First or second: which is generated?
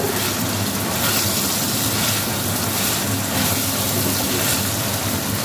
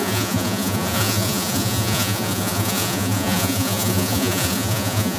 second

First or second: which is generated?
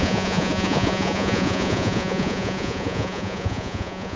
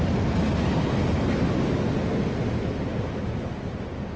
first